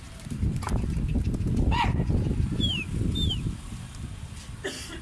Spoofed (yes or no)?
no